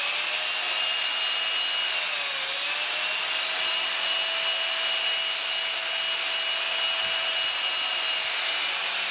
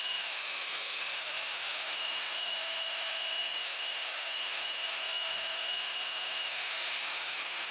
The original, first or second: first